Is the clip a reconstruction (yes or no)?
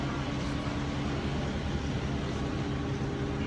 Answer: no